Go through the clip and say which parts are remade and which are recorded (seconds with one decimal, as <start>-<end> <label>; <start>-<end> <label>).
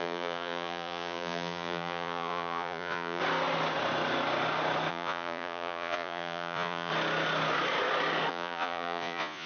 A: 0.0-3.2 remade; 3.2-4.9 recorded; 4.9-6.9 remade; 6.9-8.3 recorded; 8.3-9.5 remade